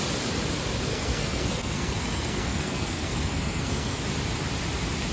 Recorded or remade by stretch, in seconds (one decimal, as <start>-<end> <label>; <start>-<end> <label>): 0.0-0.9 recorded; 0.9-4.0 remade; 4.0-5.1 recorded